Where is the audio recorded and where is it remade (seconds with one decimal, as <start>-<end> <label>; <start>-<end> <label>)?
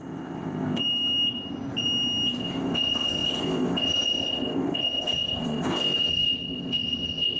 0.0-0.8 remade; 0.8-2.4 recorded; 2.4-7.4 remade